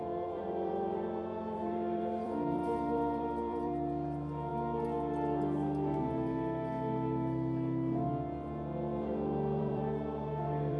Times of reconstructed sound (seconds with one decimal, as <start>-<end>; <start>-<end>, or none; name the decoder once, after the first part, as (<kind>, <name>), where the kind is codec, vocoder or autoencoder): 0.0-4.5 (vocoder, BigVGAN v2); 9.6-10.8